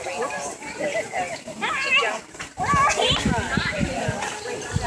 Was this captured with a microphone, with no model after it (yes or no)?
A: yes